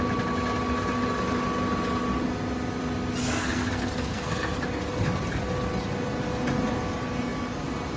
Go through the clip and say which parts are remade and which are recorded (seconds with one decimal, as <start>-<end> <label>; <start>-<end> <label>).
0.0-3.2 recorded; 3.2-4.6 remade; 4.6-8.0 recorded